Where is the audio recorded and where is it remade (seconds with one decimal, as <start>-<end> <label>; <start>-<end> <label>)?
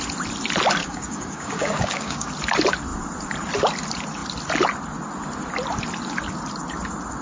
0.0-0.8 recorded; 0.8-2.3 remade; 2.3-7.2 recorded